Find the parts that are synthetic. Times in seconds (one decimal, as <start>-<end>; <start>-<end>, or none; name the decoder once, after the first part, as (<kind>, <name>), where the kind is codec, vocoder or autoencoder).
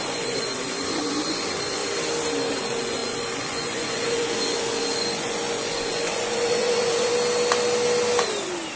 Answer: 0.0-1.8 (vocoder, Vocos); 2.6-7.1